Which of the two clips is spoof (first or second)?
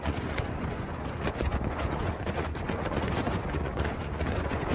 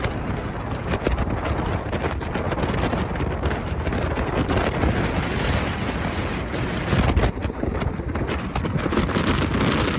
first